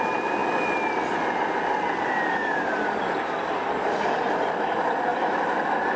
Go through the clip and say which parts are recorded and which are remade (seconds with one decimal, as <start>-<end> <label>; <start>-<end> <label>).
0.0-6.0 recorded